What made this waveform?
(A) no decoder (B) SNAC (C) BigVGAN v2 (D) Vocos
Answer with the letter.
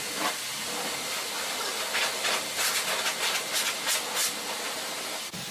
A